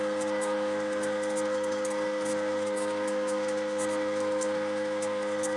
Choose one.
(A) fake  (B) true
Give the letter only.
A